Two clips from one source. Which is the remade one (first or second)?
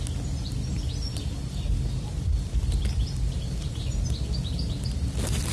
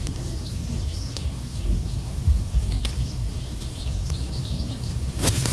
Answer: second